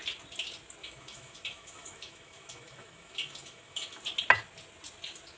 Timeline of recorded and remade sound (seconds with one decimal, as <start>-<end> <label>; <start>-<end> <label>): 0.0-0.8 recorded; 0.8-4.0 remade; 4.0-5.4 recorded